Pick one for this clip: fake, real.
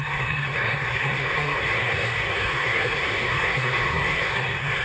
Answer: fake